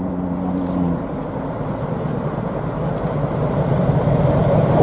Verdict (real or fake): fake